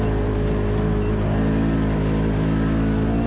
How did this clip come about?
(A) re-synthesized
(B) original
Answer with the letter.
B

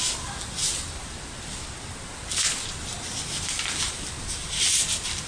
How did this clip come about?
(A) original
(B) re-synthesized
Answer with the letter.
A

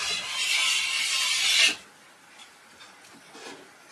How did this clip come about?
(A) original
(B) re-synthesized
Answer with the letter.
A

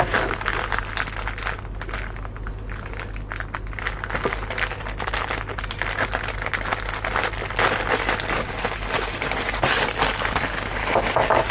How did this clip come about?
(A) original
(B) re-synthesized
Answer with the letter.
A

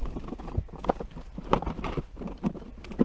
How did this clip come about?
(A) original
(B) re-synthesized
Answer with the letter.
A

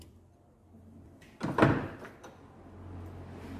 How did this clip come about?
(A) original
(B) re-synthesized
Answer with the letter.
A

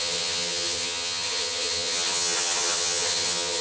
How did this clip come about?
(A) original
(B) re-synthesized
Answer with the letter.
B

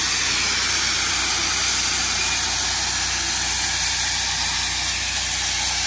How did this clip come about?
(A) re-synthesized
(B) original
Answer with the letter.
B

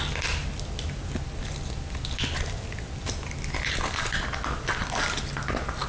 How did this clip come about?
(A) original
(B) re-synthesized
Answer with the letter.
A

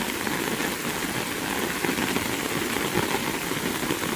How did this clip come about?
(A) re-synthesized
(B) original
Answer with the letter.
B